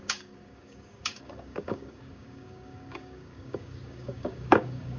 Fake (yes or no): yes